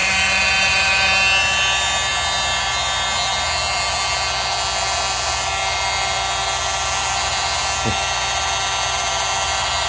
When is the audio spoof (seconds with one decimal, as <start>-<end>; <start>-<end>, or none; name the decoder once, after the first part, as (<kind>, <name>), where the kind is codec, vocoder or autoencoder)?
0.0-1.1 (vocoder, BigVGAN v2)